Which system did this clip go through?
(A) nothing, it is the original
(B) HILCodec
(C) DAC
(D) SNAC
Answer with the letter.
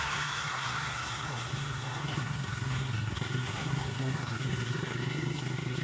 D